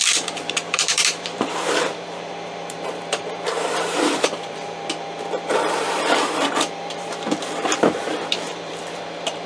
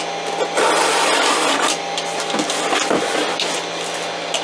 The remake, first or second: first